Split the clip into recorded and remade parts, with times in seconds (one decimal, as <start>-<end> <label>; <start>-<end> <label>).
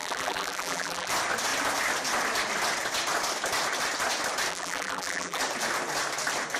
0.0-1.1 remade; 1.1-4.5 recorded; 4.5-5.4 remade; 5.4-6.6 recorded